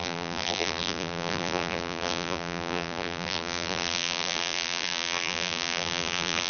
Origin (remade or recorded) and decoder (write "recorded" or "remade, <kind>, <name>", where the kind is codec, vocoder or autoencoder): remade, vocoder, BigVGAN v2